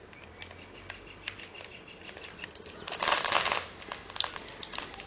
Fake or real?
real